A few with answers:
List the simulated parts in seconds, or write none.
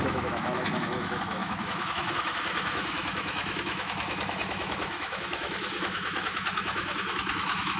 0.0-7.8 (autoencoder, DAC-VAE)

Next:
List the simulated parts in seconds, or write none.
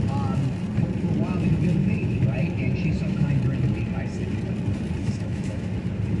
1.8-3.3 (autoencoder, DAC-VAE); 5.0-5.7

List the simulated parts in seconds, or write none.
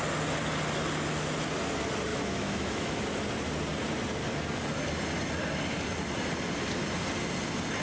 2.1-2.9 (autoencoder, DAC-VAE)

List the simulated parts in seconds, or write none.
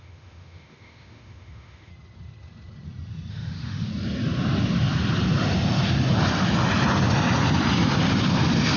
0.0-1.9 (autoencoder, DAC-VAE); 3.3-3.9